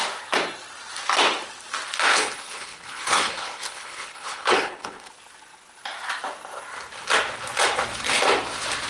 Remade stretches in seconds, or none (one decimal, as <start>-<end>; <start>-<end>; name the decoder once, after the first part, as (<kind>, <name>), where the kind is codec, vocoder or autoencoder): 2.1-5.1 (codec, HILCodec)